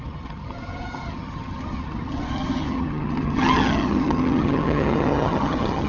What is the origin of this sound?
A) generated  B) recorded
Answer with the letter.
A